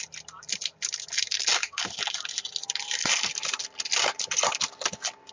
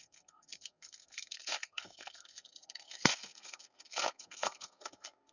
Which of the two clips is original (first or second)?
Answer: first